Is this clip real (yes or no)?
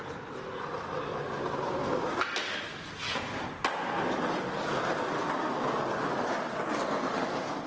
yes